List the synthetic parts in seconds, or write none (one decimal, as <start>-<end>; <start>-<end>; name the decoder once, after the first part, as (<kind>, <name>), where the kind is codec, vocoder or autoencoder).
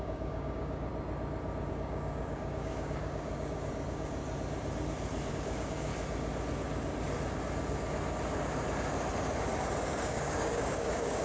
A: 0.0-0.9 (codec, DAC); 1.7-4.2; 5.3-5.9; 9.9-11.2